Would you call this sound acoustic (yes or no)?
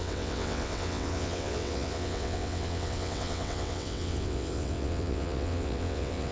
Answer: no